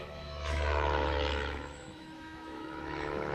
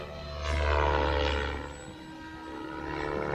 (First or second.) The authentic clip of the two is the second